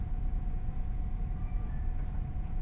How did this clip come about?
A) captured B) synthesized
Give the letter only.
B